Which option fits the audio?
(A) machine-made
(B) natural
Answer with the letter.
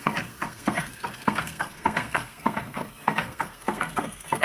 A